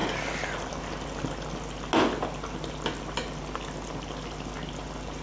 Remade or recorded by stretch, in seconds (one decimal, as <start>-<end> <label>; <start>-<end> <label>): 0.0-5.2 recorded